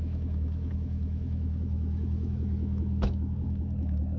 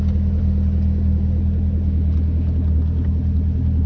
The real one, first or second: second